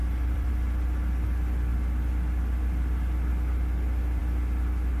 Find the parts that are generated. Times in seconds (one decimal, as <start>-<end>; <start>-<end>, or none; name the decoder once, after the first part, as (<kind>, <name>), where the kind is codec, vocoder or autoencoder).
0.0-0.5 (vocoder, BigVGAN v2)